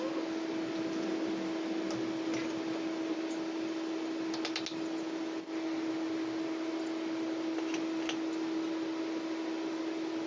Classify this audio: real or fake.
real